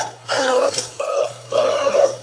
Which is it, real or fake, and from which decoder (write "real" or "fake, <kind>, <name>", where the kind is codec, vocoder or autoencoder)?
fake, codec, SNAC